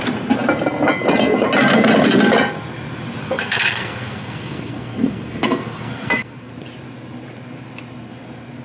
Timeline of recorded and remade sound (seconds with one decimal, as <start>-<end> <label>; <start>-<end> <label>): 0.0-3.2 recorded; 3.2-6.5 remade; 6.5-8.6 recorded